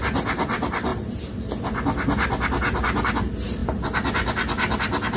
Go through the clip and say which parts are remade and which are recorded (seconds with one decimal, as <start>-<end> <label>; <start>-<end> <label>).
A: 0.0-5.2 recorded